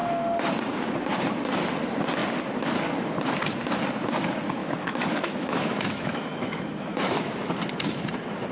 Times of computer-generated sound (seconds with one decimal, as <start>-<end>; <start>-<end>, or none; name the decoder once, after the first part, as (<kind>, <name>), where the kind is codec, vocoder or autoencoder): 4.6-7.5 (autoencoder, DAC-VAE)